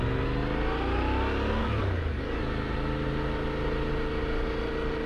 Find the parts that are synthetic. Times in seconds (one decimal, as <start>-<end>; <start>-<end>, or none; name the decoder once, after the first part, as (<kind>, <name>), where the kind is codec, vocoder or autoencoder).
1.6-2.4 (codec, DAC)